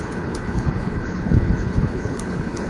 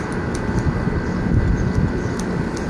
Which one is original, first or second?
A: second